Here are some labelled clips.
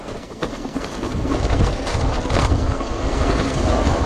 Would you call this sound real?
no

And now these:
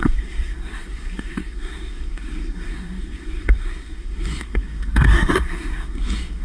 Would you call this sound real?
no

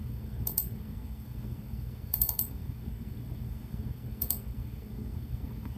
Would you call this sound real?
no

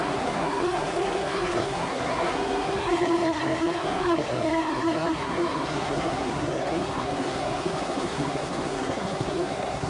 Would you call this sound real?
no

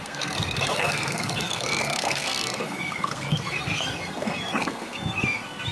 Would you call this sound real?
no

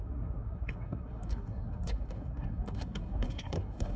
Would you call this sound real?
no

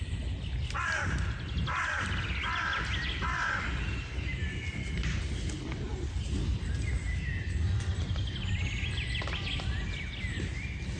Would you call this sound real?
yes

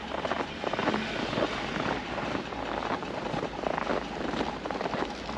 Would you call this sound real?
yes